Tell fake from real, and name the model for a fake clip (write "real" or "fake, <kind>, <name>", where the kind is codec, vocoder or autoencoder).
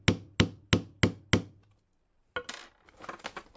real